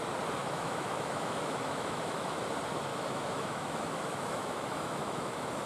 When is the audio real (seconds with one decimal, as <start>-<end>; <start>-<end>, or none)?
0.0-0.4; 2.4-2.9